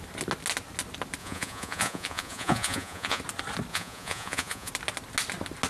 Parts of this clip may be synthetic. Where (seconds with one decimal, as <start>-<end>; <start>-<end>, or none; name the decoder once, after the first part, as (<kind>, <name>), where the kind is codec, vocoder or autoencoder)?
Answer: 1.2-3.2 (vocoder, Vocos); 3.7-4.7